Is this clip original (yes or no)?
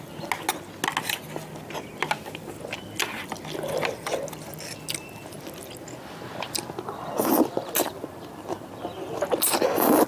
yes